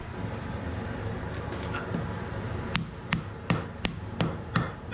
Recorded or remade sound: recorded